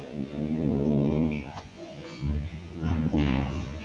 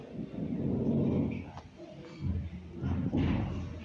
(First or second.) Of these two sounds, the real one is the second